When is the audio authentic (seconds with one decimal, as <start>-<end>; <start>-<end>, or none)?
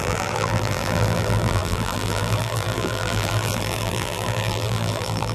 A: none